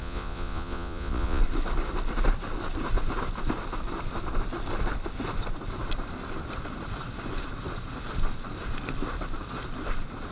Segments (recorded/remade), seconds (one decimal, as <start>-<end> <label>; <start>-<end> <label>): 0.0-1.4 remade; 1.4-10.3 recorded